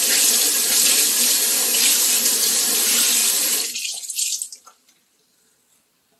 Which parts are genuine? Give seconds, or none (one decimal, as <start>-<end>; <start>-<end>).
0.0-1.7; 2.6-3.2